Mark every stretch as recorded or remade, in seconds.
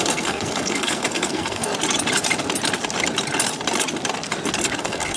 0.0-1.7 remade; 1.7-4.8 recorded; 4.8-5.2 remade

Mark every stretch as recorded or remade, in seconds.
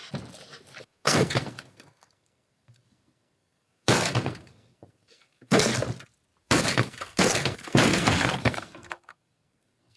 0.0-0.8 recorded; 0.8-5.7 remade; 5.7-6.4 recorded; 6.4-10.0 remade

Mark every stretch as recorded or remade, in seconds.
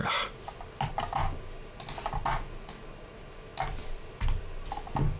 0.0-5.2 recorded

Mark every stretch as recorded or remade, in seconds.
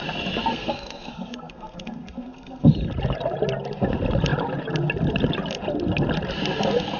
0.0-0.5 recorded; 0.5-2.7 remade; 2.7-7.0 recorded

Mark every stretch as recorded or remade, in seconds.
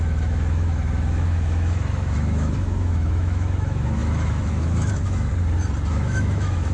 0.0-5.3 remade; 5.3-5.9 recorded; 5.9-6.7 remade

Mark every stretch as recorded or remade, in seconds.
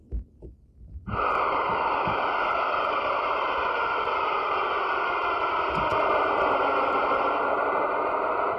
0.0-8.6 recorded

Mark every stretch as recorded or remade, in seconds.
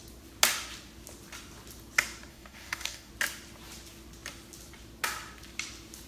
0.0-2.3 recorded; 2.3-3.1 remade; 3.1-6.1 recorded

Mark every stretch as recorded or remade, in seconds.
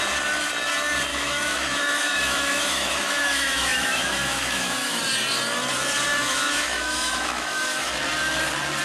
0.0-1.1 recorded; 1.1-5.0 remade; 5.0-6.1 recorded; 6.1-7.9 remade; 7.9-8.8 recorded